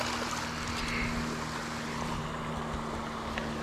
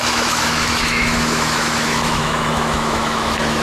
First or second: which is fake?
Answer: second